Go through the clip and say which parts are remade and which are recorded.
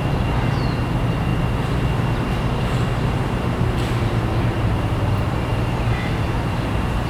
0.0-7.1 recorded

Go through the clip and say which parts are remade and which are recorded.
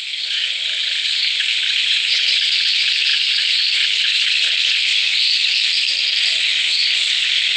0.0-5.7 remade; 5.7-6.4 recorded; 6.4-7.6 remade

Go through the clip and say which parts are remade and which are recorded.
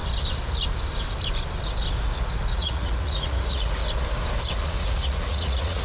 0.0-2.5 recorded; 2.5-3.8 remade; 3.8-4.6 recorded; 4.6-5.8 remade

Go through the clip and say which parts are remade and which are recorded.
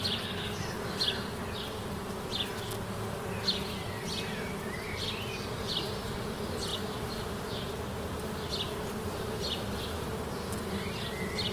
0.0-11.5 recorded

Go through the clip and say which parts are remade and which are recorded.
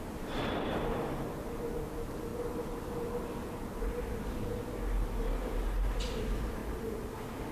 0.0-7.5 recorded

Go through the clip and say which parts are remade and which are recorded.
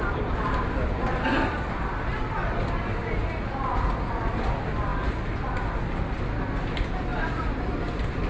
0.0-8.3 recorded